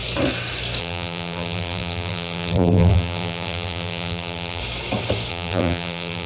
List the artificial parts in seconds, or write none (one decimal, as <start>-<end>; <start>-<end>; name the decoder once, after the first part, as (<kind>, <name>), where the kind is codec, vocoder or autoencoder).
0.8-4.6 (vocoder, BigVGAN v2); 5.3-6.3